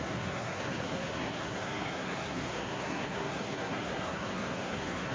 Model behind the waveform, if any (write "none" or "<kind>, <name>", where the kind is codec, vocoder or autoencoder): codec, SNAC